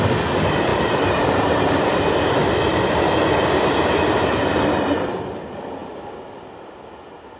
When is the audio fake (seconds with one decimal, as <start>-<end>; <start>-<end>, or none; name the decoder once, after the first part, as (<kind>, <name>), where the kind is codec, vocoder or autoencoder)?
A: none